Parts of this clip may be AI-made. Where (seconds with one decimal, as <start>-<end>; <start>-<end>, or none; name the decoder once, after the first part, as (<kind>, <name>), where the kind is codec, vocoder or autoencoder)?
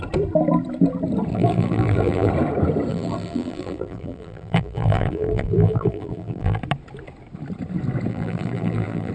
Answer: 1.3-2.3 (vocoder, BigVGAN v2); 2.9-6.6; 8.1-9.1